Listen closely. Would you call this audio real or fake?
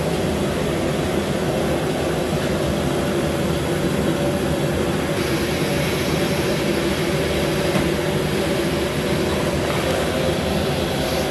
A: real